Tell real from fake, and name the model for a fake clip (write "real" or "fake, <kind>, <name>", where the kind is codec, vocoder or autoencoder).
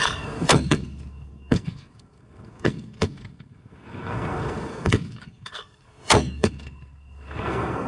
fake, codec, SNAC